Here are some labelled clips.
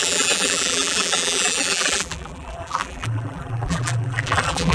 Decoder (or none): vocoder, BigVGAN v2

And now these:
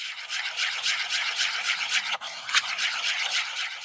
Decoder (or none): vocoder, BigVGAN v2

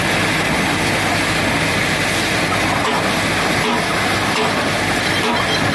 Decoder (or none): none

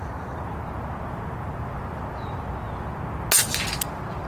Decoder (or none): none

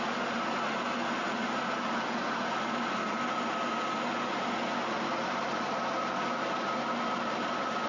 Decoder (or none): none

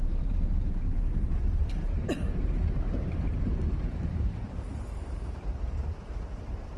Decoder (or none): vocoder, BigVGAN v2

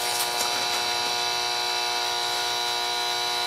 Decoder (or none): none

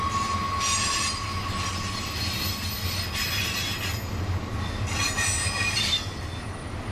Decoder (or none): none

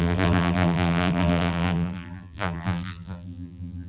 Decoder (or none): vocoder, BigVGAN v2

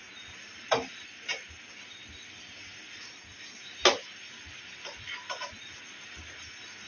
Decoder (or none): none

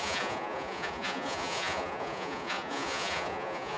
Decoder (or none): vocoder, Vocos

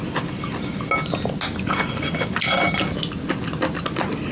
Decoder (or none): none